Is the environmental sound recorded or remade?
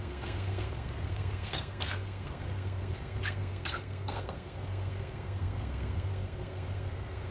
remade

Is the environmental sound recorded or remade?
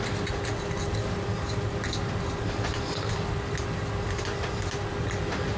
recorded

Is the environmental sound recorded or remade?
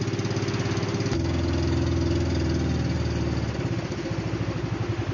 recorded